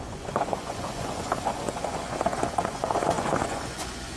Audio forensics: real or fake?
fake